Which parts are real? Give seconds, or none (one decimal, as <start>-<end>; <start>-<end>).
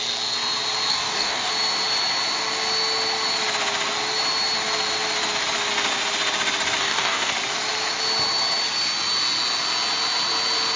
0.0-0.9; 1.5-6.8; 7.3-10.8